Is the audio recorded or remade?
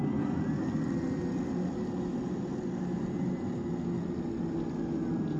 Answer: recorded